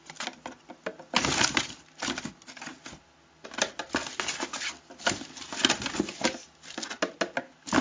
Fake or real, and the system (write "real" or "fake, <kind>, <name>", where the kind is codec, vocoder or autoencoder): real